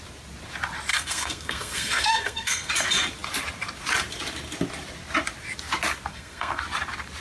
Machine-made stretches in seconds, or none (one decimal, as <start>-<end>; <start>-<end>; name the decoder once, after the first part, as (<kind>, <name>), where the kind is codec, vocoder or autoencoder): 0.9-2.7 (codec, SNAC); 6.1-6.6